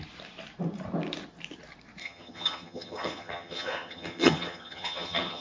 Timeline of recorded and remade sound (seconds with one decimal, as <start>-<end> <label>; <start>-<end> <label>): 0.0-2.0 recorded; 2.0-5.4 remade